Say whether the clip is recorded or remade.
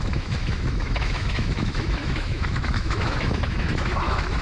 remade